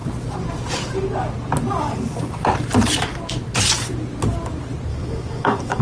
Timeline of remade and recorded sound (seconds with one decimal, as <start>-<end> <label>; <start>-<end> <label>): 0.0-4.9 recorded; 4.9-5.8 remade